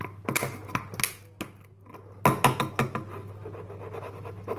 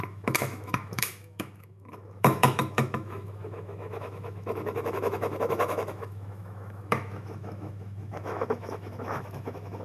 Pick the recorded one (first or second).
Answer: first